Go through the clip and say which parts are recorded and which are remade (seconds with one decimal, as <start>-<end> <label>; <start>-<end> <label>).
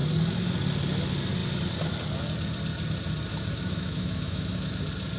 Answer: 0.0-3.3 recorded; 3.3-4.7 remade; 4.7-5.2 recorded